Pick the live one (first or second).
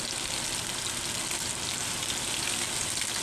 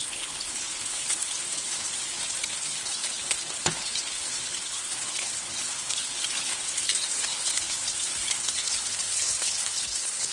first